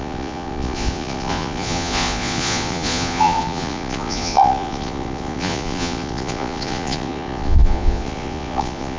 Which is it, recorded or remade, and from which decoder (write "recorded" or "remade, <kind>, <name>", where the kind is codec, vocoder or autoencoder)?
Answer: remade, vocoder, Vocos